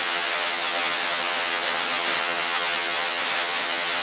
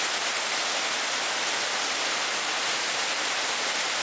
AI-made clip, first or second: first